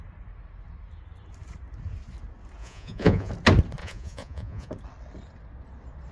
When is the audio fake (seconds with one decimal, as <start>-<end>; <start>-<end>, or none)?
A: 2.6-3.3; 3.8-4.7

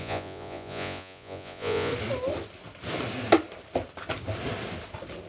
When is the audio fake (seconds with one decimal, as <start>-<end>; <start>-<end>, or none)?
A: 0.0-1.9

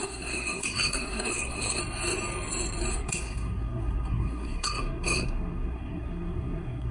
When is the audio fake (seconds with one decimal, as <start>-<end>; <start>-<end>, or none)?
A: 0.0-1.8; 2.9-6.9

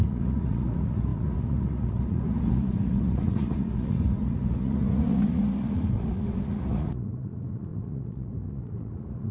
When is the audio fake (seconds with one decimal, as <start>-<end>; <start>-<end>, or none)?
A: 0.0-9.3

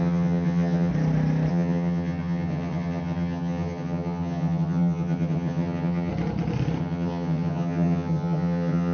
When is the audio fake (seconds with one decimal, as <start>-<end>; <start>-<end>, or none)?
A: 0.0-0.9; 1.5-6.1; 6.8-8.9

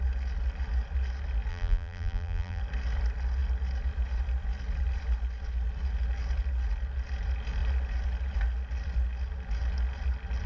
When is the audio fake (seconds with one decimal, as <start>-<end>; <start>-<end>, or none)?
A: 1.5-2.6

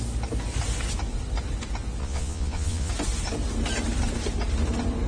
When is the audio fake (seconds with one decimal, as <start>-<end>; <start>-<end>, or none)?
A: 2.0-2.9